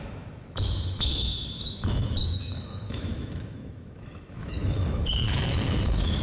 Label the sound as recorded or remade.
remade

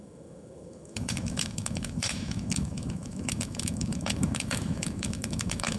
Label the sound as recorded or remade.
remade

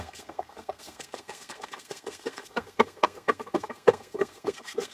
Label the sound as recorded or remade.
remade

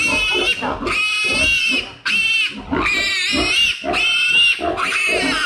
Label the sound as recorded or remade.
recorded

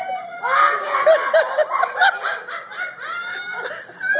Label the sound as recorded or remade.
recorded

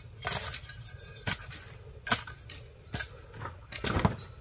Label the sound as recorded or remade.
recorded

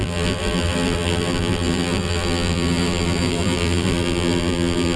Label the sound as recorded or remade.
remade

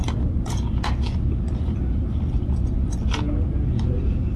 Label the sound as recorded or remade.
recorded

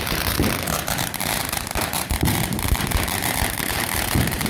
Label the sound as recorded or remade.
remade